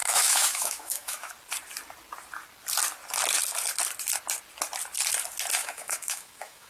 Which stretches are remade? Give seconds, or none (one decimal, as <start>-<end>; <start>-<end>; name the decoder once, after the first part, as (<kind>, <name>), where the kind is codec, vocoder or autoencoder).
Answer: 0.0-1.3 (autoencoder, DAC-VAE); 5.6-6.7